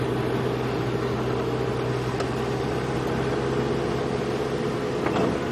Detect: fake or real real